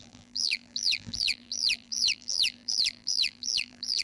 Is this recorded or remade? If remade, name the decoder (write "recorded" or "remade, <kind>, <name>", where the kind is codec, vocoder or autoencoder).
remade, vocoder, BigVGAN v2